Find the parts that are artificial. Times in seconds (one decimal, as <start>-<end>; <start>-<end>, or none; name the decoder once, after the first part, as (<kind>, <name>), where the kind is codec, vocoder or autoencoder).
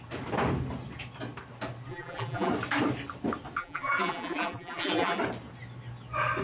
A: 1.9-2.5 (vocoder, BigVGAN v2); 3.6-5.2